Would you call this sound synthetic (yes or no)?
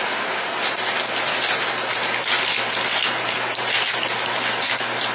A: no